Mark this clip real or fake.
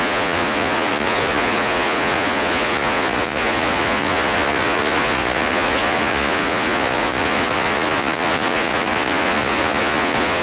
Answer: fake